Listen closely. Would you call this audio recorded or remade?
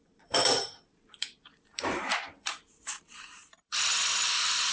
remade